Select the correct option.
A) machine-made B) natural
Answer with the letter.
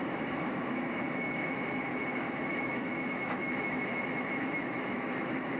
A